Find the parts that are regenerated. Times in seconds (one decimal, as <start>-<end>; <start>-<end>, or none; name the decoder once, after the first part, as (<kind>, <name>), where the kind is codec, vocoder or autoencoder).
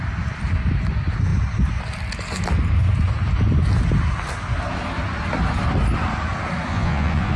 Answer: 6.7-7.4 (vocoder, Vocos)